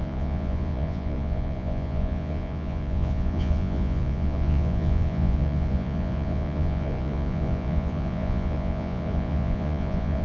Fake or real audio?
fake